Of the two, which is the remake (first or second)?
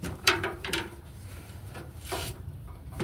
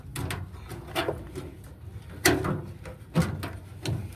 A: first